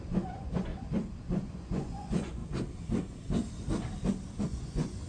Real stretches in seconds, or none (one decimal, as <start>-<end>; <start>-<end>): 0.7-1.2; 2.4-4.4

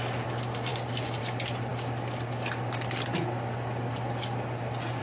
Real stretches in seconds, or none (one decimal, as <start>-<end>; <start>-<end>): 0.0-5.0

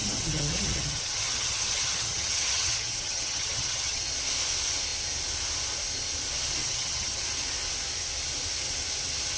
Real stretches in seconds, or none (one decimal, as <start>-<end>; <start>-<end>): 4.0-6.6; 7.2-9.4

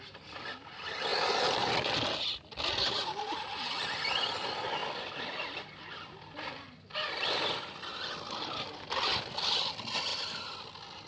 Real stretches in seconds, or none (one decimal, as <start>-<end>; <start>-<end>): 0.0-11.1

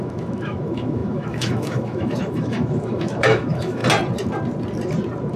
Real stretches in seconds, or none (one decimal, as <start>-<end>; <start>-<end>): 3.8-5.4

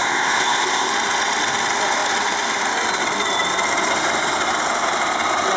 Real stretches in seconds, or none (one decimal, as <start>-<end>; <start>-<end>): 0.9-5.6